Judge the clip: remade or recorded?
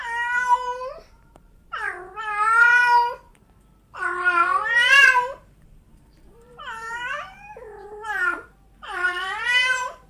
remade